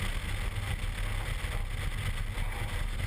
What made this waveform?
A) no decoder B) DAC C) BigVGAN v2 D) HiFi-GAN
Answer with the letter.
A